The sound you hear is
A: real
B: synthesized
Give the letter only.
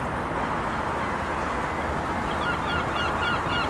A